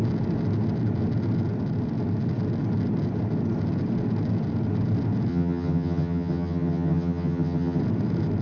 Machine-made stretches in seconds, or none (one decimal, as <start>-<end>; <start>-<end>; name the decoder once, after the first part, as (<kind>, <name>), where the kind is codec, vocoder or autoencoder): 5.3-7.8 (vocoder, HiFi-GAN)